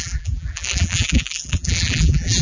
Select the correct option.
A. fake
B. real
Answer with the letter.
A